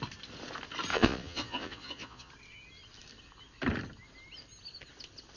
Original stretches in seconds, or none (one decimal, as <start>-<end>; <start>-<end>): 0.0-0.9; 2.3-5.4